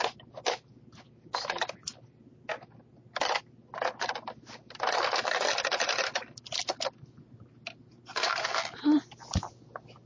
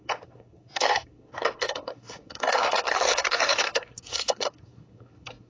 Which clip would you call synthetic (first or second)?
second